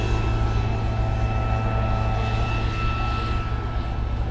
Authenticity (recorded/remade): recorded